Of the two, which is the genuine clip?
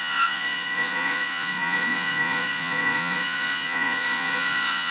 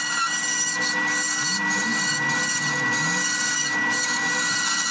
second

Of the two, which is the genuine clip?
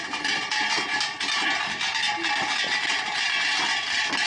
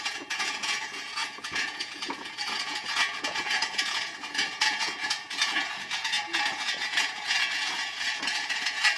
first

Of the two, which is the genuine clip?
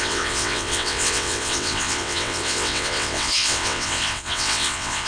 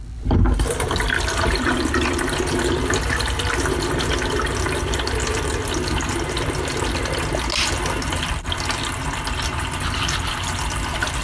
second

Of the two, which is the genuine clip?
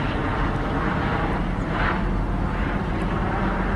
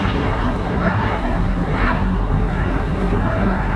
first